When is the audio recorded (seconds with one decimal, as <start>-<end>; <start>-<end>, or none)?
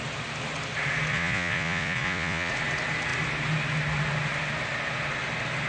0.0-1.1; 2.5-5.7